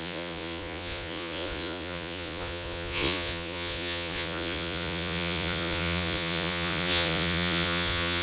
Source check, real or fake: fake